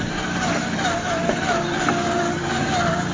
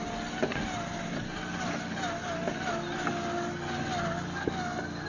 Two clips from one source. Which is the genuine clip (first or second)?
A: second